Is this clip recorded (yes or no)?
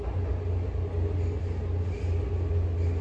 yes